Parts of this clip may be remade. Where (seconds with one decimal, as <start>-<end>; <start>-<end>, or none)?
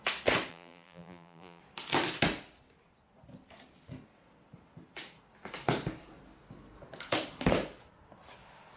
0.5-1.6